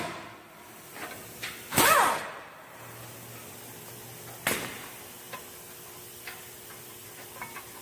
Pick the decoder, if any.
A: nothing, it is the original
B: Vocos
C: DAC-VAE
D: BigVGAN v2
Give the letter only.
A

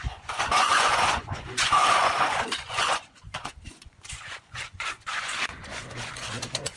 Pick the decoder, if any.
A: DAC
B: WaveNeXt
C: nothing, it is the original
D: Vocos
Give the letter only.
D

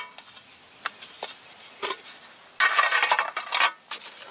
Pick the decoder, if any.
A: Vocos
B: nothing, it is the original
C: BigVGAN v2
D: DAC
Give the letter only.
B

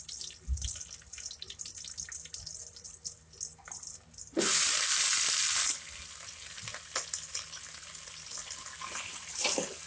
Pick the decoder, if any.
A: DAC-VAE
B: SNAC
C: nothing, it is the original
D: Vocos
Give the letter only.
C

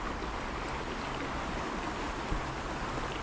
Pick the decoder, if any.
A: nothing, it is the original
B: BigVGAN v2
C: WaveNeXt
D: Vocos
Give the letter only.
A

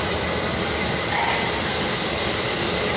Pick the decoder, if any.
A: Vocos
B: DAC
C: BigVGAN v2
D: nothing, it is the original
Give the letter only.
D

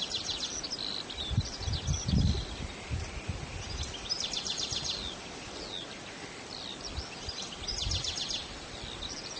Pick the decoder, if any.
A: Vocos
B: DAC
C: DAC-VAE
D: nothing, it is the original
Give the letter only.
D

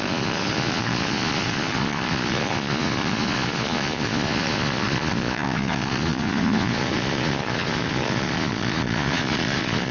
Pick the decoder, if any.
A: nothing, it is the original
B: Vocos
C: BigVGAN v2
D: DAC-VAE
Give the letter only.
B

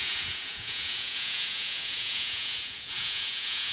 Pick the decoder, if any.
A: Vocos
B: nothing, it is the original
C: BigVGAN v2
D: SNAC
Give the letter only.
A